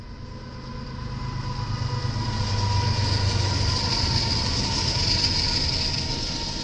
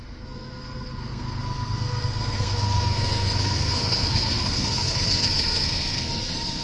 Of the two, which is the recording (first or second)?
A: first